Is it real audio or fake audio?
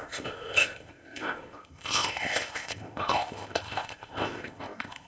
fake